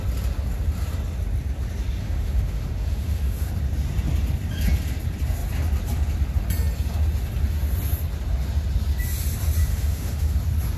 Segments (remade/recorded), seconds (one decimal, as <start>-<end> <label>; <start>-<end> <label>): 0.0-2.0 recorded; 2.0-3.5 remade; 3.5-9.7 recorded; 9.7-10.4 remade; 10.4-10.8 recorded